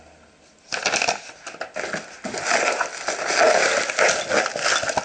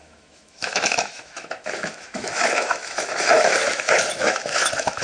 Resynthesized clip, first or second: second